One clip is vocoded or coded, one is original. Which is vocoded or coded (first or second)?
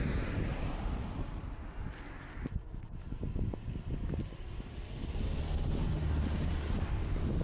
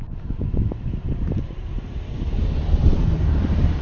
second